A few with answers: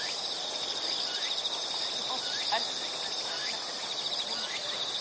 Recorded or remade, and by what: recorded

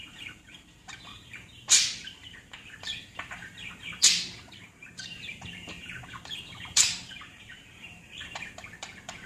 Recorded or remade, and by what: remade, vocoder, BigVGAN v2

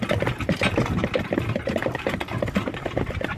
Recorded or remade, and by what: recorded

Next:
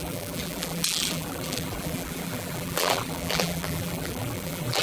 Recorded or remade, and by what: remade, vocoder, BigVGAN v2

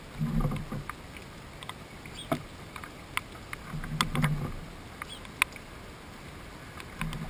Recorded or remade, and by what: recorded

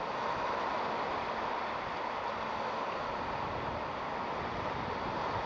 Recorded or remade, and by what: recorded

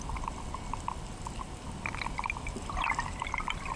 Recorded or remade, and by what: recorded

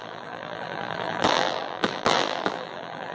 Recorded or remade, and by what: remade, vocoder, BigVGAN v2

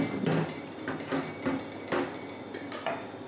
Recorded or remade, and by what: remade, vocoder, BigVGAN v2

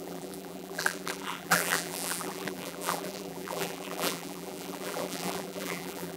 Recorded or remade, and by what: remade, vocoder, BigVGAN v2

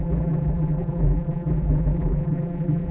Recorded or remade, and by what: remade, vocoder, BigVGAN v2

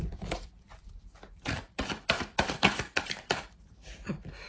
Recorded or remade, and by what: remade, vocoder, BigVGAN v2